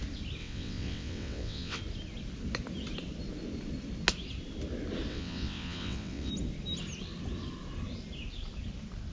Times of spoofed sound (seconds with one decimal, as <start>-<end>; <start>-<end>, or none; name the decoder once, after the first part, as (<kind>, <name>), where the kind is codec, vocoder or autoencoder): 0.4-1.8 (vocoder, WaveNeXt); 5.1-6.3